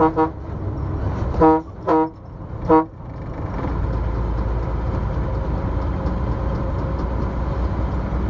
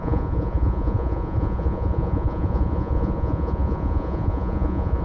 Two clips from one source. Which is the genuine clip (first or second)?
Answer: first